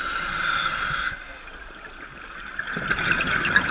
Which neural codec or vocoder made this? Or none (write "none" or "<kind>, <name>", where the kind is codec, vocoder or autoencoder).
none